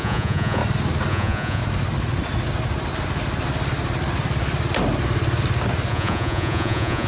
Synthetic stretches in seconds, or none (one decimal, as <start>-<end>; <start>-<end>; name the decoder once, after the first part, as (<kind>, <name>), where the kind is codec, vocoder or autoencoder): 0.0-0.6 (vocoder, Vocos); 1.1-1.6; 5.9-7.1